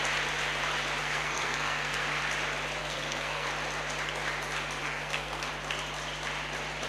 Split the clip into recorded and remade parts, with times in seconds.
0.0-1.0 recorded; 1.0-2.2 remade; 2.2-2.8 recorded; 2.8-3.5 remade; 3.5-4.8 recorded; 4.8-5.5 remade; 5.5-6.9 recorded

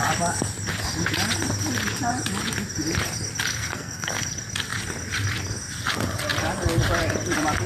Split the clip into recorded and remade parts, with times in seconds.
0.0-3.5 recorded; 3.5-4.3 remade; 4.3-7.7 recorded